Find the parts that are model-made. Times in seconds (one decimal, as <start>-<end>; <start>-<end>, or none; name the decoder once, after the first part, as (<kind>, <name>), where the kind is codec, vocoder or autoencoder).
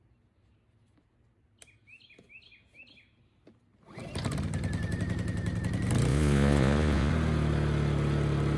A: 6.1-7.1 (vocoder, Vocos)